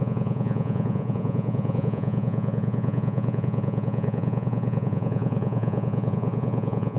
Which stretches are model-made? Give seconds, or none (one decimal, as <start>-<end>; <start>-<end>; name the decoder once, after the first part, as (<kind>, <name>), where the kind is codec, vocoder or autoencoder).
0.0-7.0 (vocoder, Vocos)